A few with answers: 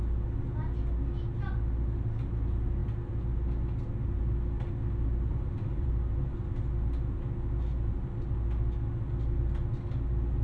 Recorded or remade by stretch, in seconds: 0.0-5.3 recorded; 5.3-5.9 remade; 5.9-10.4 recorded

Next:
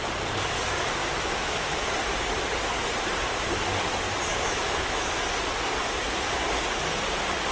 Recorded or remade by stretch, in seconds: 0.0-1.0 recorded; 1.0-1.9 remade; 1.9-4.3 recorded; 4.3-5.1 remade; 5.1-7.5 recorded

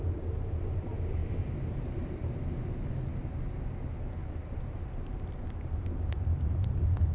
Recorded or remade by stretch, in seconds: 0.0-7.1 recorded